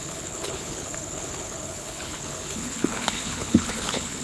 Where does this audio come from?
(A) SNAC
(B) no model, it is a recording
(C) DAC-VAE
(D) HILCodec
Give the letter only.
D